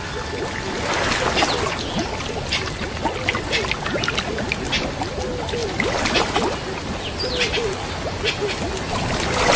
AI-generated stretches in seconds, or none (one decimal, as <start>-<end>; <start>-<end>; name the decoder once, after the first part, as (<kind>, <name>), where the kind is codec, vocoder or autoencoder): none